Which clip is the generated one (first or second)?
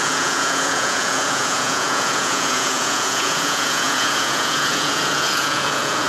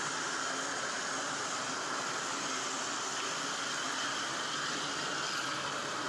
first